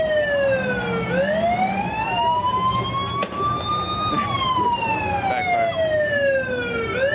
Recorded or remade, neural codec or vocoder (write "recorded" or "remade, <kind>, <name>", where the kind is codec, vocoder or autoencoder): recorded